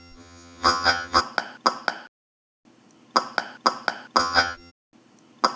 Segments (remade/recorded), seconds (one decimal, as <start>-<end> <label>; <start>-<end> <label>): 0.0-1.2 remade; 1.2-4.2 recorded; 4.2-4.7 remade; 4.7-5.6 recorded